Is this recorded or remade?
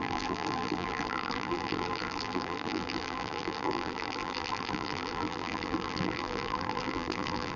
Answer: remade